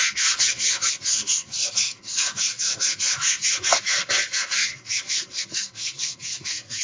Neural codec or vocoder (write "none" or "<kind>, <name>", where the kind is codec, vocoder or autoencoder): codec, SNAC